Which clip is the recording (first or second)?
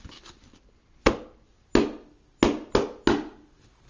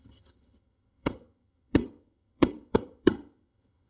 first